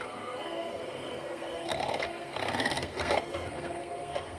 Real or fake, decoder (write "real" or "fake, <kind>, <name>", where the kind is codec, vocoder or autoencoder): fake, codec, SNAC